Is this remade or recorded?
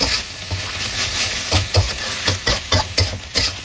recorded